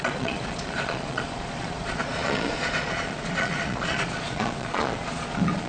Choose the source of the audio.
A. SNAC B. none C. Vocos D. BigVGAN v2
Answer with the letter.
C